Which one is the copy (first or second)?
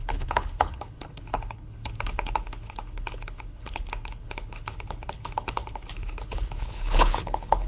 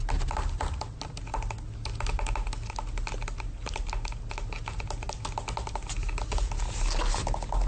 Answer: first